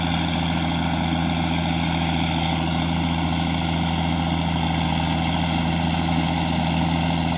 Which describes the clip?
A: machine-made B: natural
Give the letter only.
B